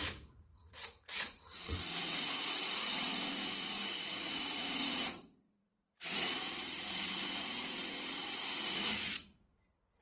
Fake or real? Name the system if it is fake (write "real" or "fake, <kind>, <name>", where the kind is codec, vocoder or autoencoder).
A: fake, vocoder, Vocos